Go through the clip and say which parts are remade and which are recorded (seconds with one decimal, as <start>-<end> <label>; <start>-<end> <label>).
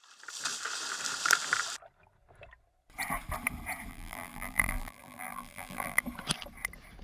0.0-3.9 recorded; 3.9-6.0 remade; 6.0-7.0 recorded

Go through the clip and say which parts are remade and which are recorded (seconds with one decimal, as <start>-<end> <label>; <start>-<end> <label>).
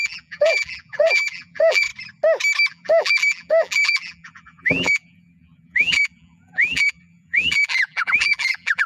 0.0-1.9 remade; 1.9-2.7 recorded; 2.7-8.9 remade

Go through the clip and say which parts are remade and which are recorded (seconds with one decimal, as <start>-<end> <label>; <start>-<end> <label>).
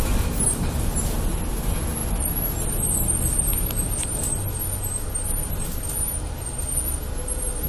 0.0-7.7 recorded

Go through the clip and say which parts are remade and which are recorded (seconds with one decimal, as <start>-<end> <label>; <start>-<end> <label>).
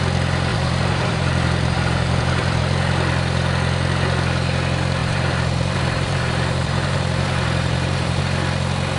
0.0-0.5 recorded; 0.5-2.6 remade; 2.6-5.0 recorded; 5.0-8.2 remade; 8.2-9.0 recorded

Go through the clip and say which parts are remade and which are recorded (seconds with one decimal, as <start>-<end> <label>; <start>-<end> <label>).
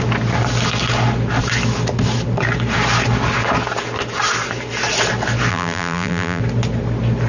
0.0-5.5 recorded; 5.5-6.4 remade; 6.4-7.3 recorded